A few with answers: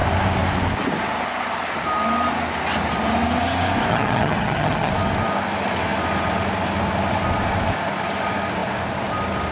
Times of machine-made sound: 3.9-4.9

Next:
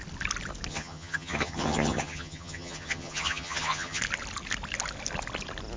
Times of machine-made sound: 0.7-4.0